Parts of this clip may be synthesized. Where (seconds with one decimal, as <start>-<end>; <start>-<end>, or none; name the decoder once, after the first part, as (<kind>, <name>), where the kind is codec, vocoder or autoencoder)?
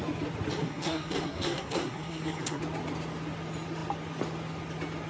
0.6-2.6 (codec, SNAC)